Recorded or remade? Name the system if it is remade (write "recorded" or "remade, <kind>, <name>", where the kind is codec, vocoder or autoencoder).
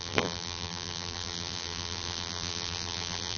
remade, vocoder, BigVGAN v2